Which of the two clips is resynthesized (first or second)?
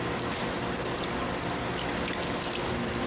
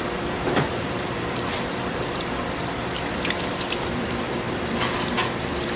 second